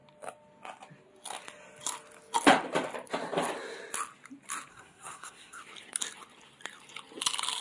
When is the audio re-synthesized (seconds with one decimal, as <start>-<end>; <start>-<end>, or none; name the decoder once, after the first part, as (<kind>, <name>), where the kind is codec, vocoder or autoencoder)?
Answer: 4.7-5.6 (codec, SNAC)

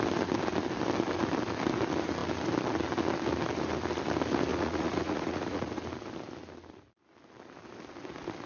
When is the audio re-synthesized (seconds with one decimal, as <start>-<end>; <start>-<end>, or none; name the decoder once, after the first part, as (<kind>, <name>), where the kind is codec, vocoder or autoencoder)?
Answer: 4.5-5.8 (vocoder, Vocos)

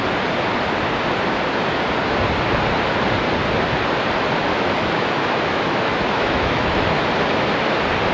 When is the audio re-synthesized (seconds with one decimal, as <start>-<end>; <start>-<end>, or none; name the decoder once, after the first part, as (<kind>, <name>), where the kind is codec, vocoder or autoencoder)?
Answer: 4.5-7.0 (autoencoder, DAC-VAE)

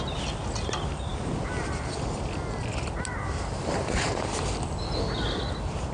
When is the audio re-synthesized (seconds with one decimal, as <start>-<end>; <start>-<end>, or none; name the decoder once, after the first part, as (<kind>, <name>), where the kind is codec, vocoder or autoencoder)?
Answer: none